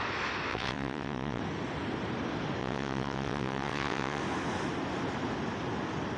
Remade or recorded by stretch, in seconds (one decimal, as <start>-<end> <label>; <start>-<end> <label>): 0.0-0.5 recorded; 0.5-1.4 remade; 1.4-2.6 recorded; 2.6-4.2 remade; 4.2-6.2 recorded